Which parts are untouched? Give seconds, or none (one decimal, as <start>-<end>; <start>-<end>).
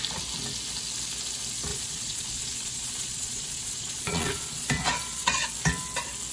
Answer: 0.0-1.7; 5.5-6.3